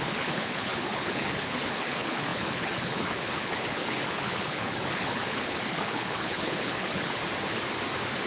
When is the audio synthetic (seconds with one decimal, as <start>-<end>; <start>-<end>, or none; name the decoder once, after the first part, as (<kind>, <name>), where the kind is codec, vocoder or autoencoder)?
0.0-7.2 (codec, HILCodec)